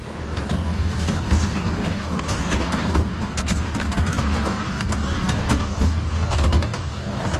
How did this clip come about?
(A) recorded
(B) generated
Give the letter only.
B